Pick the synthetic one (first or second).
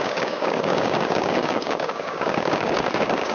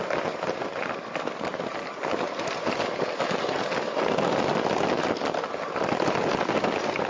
first